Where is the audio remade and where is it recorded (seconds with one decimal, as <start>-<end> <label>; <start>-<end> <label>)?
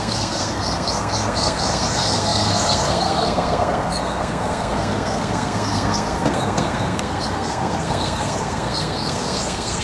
0.0-9.8 remade